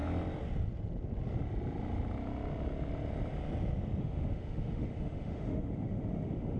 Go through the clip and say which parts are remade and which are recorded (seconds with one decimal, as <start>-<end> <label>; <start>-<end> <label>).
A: 0.0-4.0 recorded; 4.0-6.6 remade